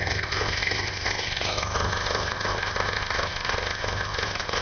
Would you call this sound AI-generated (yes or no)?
yes